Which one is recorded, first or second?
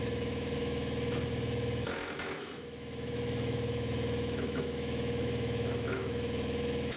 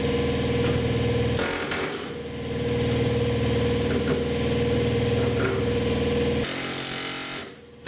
second